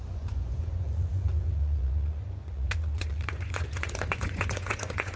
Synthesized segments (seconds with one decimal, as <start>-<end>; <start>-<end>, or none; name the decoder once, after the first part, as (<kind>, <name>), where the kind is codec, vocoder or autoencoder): 0.0-5.2 (vocoder, Vocos)